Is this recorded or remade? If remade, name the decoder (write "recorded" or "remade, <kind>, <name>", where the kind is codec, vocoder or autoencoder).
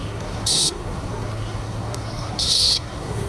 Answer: remade, codec, SNAC